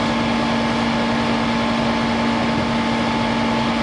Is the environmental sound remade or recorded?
recorded